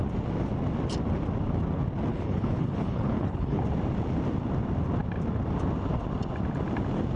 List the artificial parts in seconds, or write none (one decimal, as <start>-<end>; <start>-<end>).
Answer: 2.1-3.6